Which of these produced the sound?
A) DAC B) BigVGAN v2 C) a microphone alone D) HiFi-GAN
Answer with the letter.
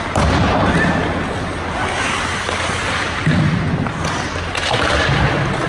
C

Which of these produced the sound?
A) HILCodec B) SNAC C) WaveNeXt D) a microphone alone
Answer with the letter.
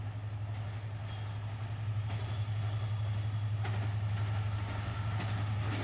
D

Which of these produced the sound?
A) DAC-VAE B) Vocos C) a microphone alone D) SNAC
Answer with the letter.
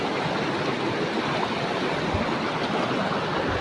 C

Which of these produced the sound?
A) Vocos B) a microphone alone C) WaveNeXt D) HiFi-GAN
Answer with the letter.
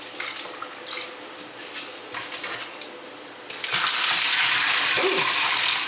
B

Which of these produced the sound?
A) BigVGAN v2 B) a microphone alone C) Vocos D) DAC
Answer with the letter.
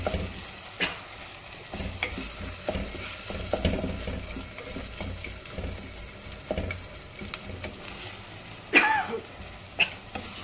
B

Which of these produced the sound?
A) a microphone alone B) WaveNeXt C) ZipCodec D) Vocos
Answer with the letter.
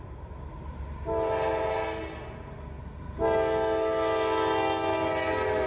A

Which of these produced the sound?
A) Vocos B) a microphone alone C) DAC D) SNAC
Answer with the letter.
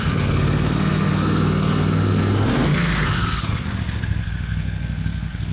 D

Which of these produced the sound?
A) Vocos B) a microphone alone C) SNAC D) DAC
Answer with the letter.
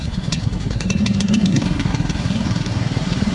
C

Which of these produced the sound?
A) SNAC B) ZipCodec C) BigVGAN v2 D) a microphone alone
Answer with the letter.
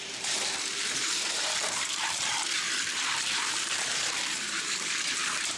C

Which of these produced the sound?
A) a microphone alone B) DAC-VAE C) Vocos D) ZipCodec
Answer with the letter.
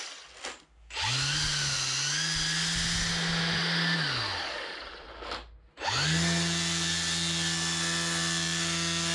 A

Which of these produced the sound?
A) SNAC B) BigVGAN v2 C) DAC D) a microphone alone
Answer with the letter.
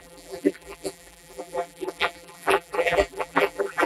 B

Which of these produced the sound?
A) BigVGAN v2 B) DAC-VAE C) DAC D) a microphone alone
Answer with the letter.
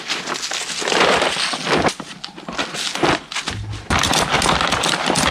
D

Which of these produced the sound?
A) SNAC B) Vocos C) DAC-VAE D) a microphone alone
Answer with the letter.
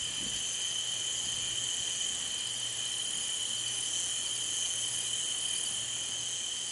D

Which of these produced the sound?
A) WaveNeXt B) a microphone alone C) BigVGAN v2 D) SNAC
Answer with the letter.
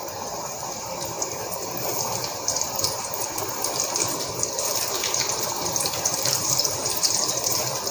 C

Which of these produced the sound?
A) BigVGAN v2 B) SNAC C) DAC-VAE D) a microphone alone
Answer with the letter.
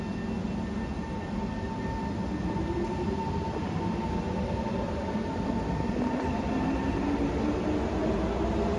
D